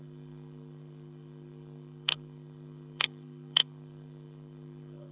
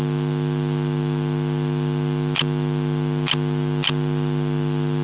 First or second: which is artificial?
first